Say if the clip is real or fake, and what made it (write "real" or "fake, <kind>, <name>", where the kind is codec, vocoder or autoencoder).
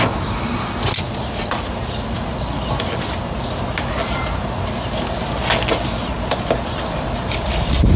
real